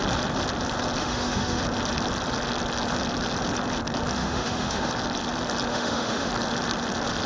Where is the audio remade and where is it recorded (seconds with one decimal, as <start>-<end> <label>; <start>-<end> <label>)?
0.0-1.0 recorded; 1.0-1.6 remade; 1.6-4.2 recorded; 4.2-4.9 remade; 4.9-5.7 recorded; 5.7-6.3 remade; 6.3-7.3 recorded